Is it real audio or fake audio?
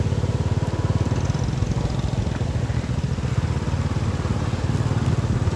real